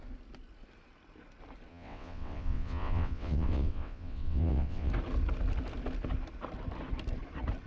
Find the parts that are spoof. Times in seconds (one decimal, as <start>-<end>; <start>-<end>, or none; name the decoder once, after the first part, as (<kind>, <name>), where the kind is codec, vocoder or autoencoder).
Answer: 1.7-4.9 (vocoder, WaveNeXt)